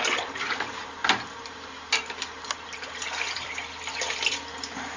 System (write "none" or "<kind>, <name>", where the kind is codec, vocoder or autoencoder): none